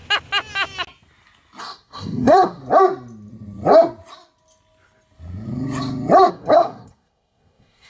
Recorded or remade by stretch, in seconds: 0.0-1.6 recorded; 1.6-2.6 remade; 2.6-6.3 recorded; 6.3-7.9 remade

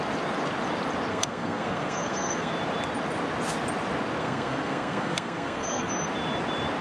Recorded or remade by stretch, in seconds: 0.0-1.1 recorded; 1.1-2.5 remade; 2.5-4.2 recorded; 4.2-5.9 remade; 5.9-6.8 recorded

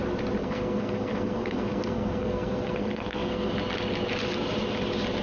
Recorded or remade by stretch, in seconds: 0.0-0.4 recorded; 0.4-3.5 remade; 3.5-5.2 recorded

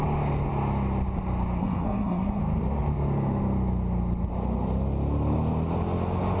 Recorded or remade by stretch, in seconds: 0.0-1.6 recorded; 1.6-2.4 remade; 2.4-6.4 recorded